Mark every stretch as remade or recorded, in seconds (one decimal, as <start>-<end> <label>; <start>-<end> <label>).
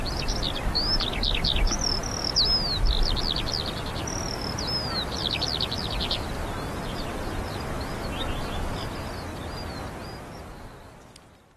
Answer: 0.0-11.6 recorded